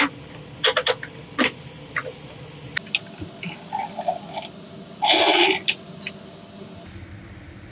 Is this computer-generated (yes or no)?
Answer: no